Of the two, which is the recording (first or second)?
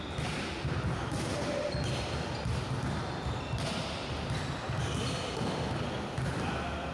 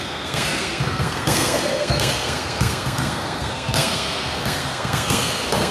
first